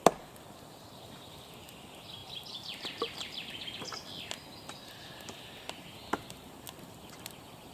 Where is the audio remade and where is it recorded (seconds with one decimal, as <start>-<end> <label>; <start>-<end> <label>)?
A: 0.0-2.2 recorded; 2.2-3.8 remade; 3.8-7.7 recorded